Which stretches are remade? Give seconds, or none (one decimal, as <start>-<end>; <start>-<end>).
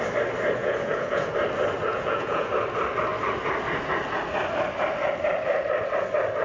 0.6-1.3; 1.9-2.5